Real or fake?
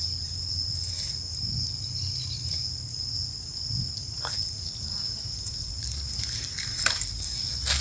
real